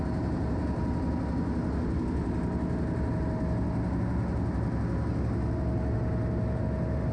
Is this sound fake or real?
real